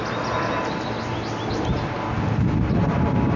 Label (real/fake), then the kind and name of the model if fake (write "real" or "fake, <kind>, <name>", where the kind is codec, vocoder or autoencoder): real